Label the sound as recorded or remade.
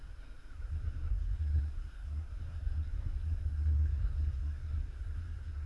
remade